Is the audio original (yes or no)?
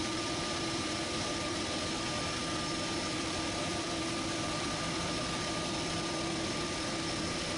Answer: no